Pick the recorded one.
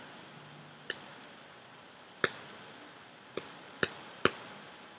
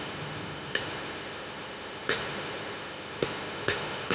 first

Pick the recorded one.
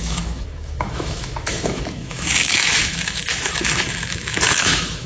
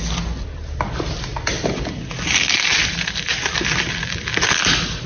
second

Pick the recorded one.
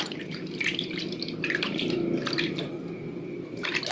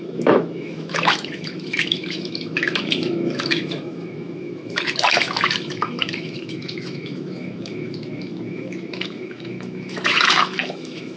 first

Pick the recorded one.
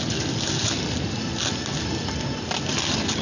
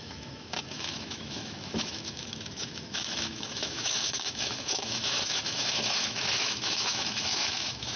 first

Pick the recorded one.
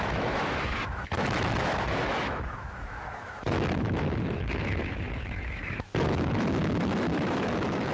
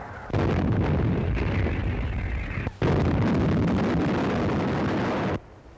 second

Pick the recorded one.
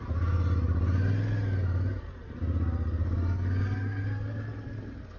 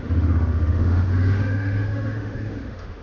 first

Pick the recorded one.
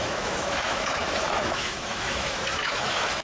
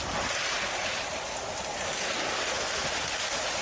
second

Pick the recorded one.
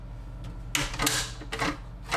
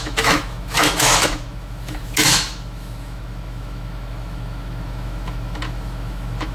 first